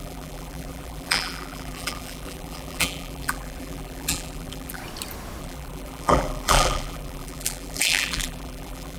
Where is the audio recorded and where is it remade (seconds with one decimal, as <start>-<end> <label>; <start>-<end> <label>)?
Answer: 0.0-4.8 remade; 4.8-5.4 recorded; 5.4-9.0 remade

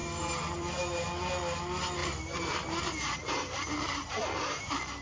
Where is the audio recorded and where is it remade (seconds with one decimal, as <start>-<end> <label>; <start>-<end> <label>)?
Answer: 0.0-1.3 remade; 1.3-2.0 recorded; 2.0-5.0 remade

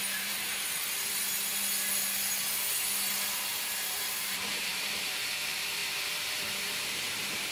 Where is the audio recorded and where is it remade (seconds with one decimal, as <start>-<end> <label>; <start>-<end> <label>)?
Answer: 0.0-1.5 remade; 1.5-3.1 recorded; 3.1-5.8 remade; 5.8-6.3 recorded; 6.3-7.5 remade

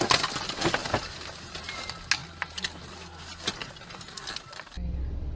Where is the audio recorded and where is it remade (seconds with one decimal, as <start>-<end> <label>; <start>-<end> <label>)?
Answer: 0.0-0.8 recorded; 0.8-1.6 remade; 1.6-2.2 recorded; 2.2-2.8 remade; 2.8-3.6 recorded; 3.6-4.1 remade; 4.1-5.4 recorded

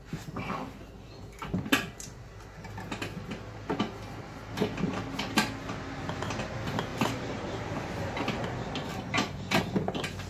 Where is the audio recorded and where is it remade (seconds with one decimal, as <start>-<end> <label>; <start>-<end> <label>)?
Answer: 0.0-6.9 recorded; 6.9-8.1 remade; 8.1-8.9 recorded; 8.9-9.6 remade; 9.6-10.3 recorded

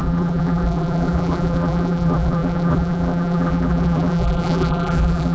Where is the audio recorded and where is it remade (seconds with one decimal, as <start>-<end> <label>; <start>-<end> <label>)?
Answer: 0.0-5.3 remade